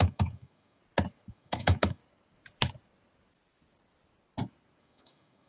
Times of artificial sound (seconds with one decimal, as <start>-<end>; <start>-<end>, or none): 0.0-0.8; 1.3-2.0; 4.8-5.5